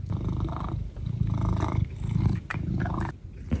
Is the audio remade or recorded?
recorded